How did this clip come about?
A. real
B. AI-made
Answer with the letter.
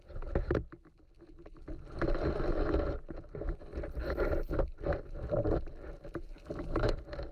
A